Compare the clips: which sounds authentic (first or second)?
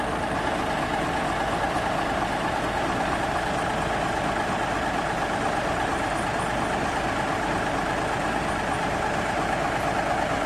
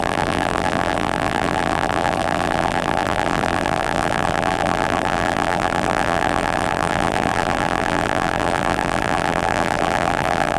first